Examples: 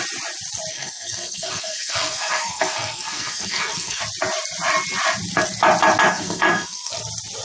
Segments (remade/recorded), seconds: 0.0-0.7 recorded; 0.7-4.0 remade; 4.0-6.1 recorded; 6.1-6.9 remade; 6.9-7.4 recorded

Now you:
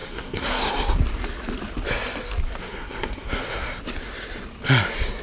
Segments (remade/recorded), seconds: 0.0-0.7 remade; 0.7-2.6 recorded; 2.6-3.8 remade; 3.8-5.2 recorded

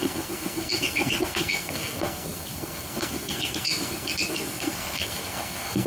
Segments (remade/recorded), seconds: 0.0-5.9 remade

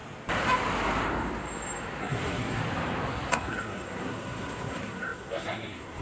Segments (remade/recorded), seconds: 0.0-2.0 recorded; 2.0-2.6 remade; 2.6-3.3 recorded; 3.3-6.0 remade

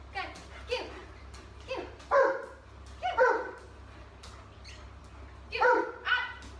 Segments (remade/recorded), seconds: 0.0-6.6 recorded